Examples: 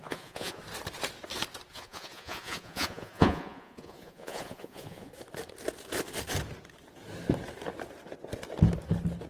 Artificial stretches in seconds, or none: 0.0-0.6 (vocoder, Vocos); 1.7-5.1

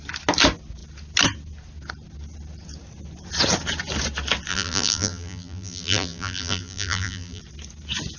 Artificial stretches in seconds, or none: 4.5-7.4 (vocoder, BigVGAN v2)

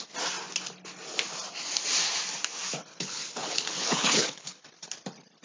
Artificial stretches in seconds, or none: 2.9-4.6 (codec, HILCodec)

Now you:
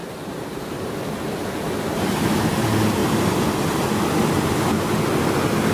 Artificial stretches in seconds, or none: 0.0-1.0 (vocoder, BigVGAN v2); 3.0-4.1

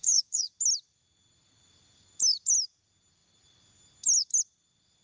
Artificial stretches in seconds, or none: 0.0-0.5 (codec, DAC)

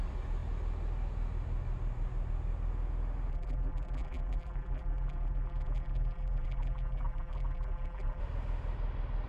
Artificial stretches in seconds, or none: 3.3-8.2 (vocoder, BigVGAN v2)

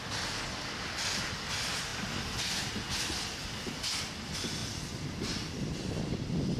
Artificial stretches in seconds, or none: none

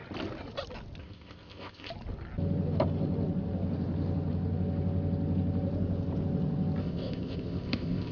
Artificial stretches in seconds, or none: 1.0-1.9 (codec, ZipCodec); 6.8-8.1